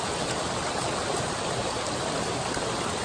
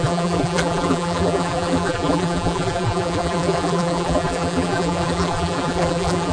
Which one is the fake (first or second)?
second